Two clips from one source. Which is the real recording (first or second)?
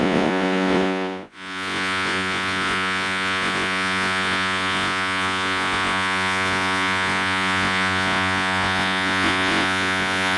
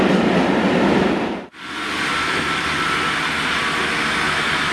second